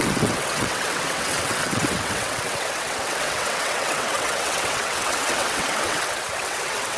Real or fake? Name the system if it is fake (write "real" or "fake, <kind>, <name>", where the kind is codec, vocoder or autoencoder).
fake, vocoder, WaveNeXt